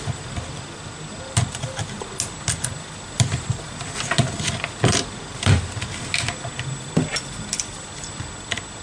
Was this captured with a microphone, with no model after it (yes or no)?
yes